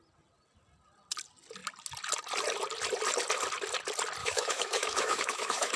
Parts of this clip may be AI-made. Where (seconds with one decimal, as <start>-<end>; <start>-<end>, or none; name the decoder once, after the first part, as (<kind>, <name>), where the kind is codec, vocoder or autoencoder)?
4.2-5.8 (autoencoder, DAC-VAE)